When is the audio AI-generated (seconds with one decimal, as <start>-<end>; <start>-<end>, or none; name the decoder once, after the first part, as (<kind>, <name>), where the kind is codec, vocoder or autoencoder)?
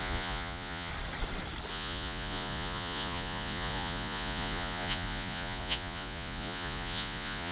0.0-0.9 (vocoder, Vocos); 1.7-7.5